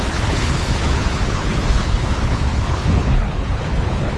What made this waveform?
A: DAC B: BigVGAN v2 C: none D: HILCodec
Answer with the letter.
D